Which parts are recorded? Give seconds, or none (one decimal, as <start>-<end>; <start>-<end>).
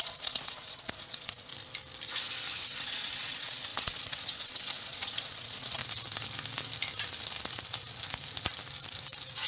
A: 1.5-2.6; 5.8-9.5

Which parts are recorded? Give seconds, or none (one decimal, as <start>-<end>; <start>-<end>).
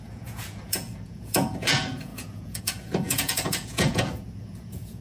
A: none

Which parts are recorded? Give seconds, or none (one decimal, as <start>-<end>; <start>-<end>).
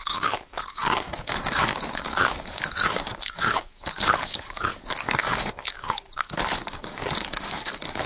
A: none